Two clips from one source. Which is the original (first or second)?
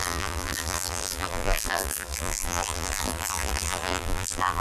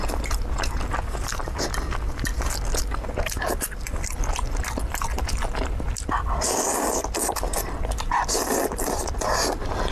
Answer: second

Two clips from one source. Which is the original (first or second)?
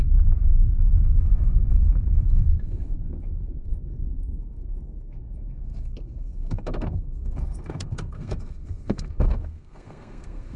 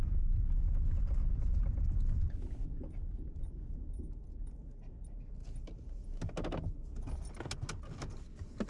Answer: second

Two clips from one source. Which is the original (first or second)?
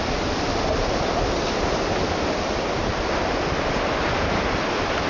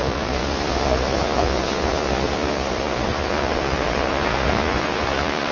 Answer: first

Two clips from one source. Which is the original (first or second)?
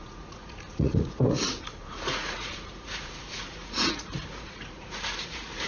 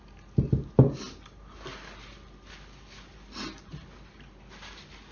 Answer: second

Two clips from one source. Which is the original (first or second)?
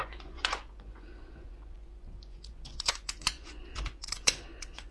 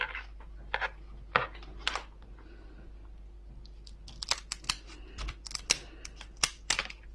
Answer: second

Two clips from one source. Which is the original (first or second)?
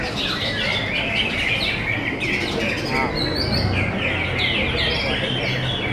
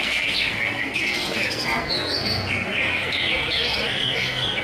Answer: first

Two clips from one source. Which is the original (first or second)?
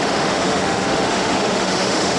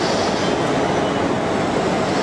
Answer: second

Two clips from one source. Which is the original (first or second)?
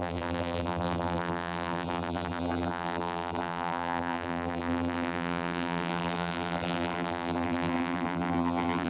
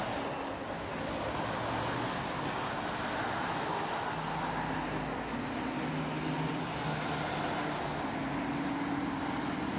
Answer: second